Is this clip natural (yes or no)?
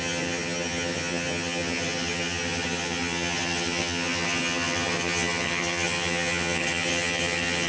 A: no